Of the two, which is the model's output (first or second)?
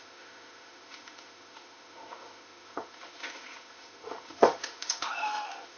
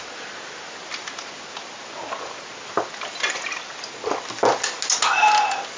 first